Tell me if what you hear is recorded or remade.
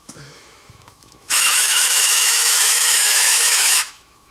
remade